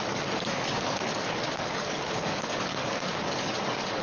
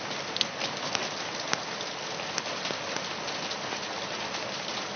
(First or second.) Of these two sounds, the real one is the second